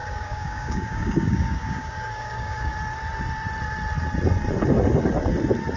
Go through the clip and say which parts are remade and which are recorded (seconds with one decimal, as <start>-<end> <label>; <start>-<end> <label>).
0.0-2.7 remade; 2.7-5.8 recorded

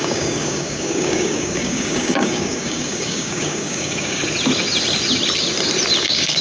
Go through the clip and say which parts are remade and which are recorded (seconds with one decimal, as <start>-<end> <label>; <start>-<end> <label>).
0.0-4.2 remade; 4.2-6.0 recorded; 6.0-6.4 remade